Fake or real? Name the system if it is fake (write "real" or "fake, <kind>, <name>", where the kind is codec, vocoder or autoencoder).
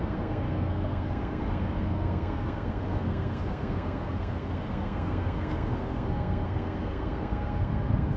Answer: fake, codec, SNAC